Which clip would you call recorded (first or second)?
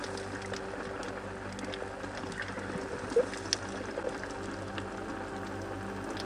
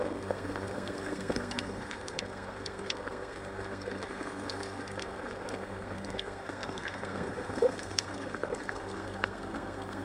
first